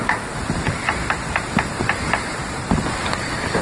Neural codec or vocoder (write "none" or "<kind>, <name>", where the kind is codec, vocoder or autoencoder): none